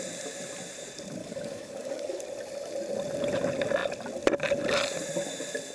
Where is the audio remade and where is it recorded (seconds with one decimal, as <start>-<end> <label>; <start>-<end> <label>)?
0.0-1.2 recorded; 1.2-2.2 remade; 2.2-5.7 recorded